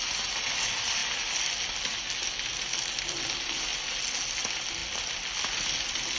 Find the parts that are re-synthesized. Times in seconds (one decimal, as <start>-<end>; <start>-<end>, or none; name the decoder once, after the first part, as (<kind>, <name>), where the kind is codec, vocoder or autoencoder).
none